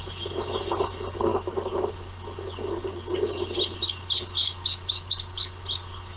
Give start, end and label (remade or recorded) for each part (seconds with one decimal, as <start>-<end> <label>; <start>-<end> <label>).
0.0-1.3 recorded; 1.3-1.9 remade; 1.9-4.4 recorded; 4.4-5.1 remade; 5.1-6.2 recorded